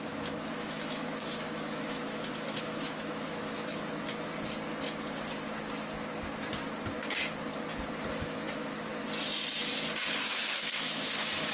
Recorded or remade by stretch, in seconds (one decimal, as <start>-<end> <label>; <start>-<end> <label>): 0.0-3.7 remade; 3.7-8.2 recorded; 8.2-8.9 remade; 8.9-10.3 recorded; 10.3-11.5 remade

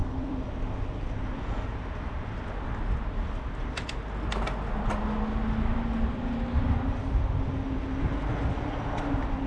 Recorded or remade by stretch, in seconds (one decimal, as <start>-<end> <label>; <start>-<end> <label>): 0.0-9.5 recorded

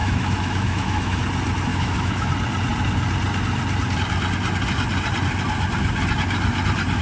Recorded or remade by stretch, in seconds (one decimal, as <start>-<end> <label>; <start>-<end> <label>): 0.0-1.2 remade; 1.2-1.7 recorded; 1.7-2.3 remade; 2.3-7.0 recorded

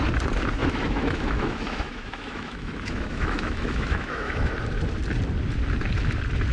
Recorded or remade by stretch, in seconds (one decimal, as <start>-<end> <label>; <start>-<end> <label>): 0.0-0.6 recorded; 0.6-4.5 remade; 4.5-6.5 recorded

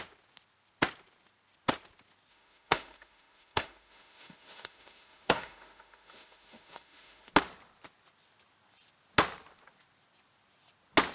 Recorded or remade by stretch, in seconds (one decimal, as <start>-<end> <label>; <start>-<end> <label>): 0.0-2.3 recorded; 2.3-7.3 remade; 7.3-11.1 recorded

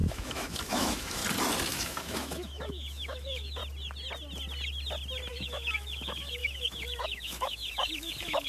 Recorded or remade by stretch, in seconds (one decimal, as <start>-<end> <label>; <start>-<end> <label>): 0.0-1.2 remade; 1.2-1.7 recorded; 1.7-3.6 remade; 3.6-5.3 recorded; 5.3-8.5 remade

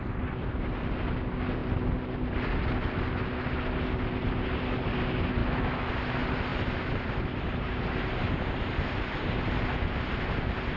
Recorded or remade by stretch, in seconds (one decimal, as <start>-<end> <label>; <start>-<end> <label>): 0.0-5.4 recorded; 5.4-5.9 remade; 5.9-10.8 recorded

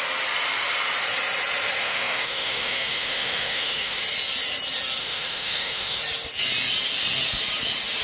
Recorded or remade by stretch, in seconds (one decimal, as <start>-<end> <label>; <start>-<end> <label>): 0.0-1.8 recorded; 1.8-4.0 remade; 4.0-5.0 recorded; 5.0-6.0 remade; 6.0-8.0 recorded